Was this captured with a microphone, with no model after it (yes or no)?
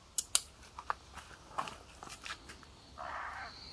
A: yes